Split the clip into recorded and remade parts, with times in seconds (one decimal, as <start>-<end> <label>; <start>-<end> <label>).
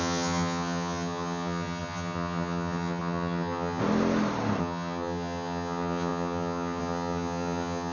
0.0-3.8 remade; 3.8-4.6 recorded; 4.6-7.9 remade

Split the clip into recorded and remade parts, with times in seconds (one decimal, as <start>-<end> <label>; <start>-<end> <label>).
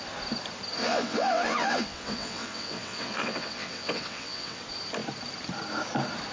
0.0-0.8 recorded; 0.8-4.6 remade; 4.6-6.3 recorded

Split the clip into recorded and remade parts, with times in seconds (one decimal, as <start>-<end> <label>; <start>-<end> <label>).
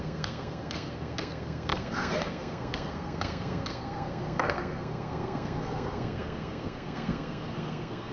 0.0-8.1 remade